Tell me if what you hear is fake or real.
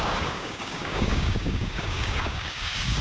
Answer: fake